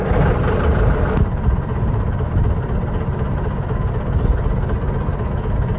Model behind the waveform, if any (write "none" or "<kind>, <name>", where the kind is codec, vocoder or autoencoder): none